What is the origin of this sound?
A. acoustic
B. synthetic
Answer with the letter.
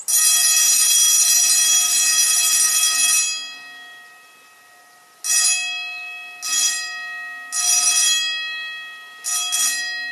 A